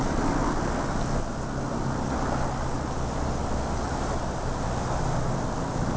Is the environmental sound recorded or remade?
recorded